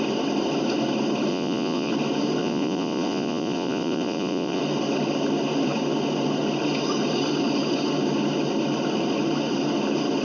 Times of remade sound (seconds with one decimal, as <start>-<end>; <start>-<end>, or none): 1.3-1.9; 2.4-4.6